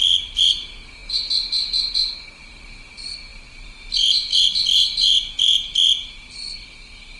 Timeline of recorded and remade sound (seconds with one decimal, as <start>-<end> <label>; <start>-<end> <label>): 0.0-7.2 remade